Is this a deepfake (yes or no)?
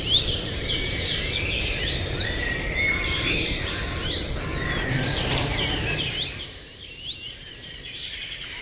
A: yes